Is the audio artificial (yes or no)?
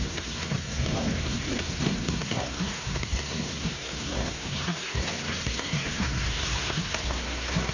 yes